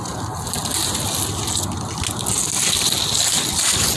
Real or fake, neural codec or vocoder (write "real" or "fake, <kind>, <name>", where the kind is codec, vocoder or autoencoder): real